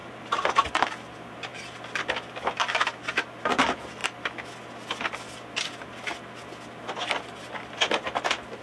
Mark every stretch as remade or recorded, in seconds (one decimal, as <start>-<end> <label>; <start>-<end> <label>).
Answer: 0.0-8.6 recorded